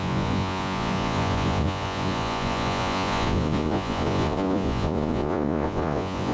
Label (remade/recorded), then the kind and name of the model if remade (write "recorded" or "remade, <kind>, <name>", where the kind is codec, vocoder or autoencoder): remade, vocoder, Vocos